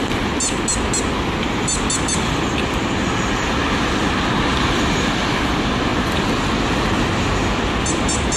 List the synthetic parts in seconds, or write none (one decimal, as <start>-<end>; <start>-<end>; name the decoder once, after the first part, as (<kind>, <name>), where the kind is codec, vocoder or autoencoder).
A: none